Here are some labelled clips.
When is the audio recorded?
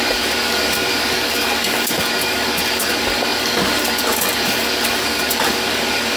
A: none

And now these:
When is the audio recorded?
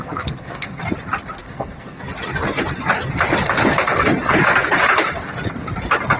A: 0.8-1.4; 2.0-6.2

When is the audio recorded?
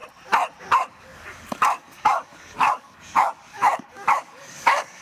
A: 0.0-0.6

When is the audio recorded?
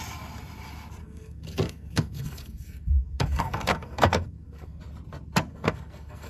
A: 0.0-1.0; 4.8-5.5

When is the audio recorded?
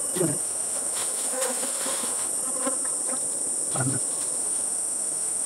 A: 0.0-0.4; 2.3-4.4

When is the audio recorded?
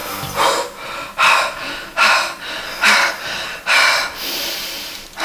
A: 0.0-5.2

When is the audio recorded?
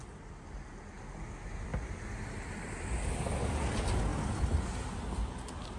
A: 0.0-5.8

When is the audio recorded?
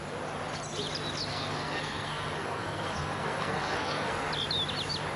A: 0.0-1.3; 4.3-5.2